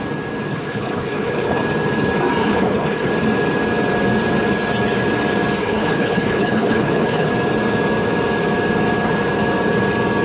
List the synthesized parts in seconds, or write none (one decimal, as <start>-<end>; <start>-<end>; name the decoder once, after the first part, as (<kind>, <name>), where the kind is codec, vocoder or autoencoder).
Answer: 0.5-1.6 (codec, HILCodec); 2.4-3.1; 5.6-7.3